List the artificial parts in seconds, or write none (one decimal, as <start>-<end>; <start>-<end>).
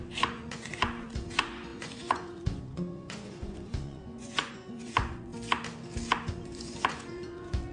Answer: 0.0-5.3; 6.3-7.7